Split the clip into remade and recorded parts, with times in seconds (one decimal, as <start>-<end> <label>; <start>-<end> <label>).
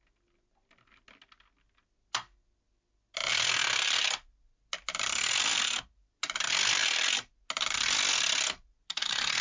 0.0-9.4 recorded